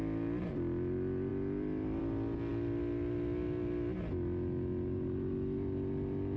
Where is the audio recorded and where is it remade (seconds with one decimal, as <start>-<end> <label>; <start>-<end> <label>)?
0.0-6.4 recorded